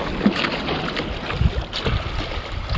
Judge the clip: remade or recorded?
recorded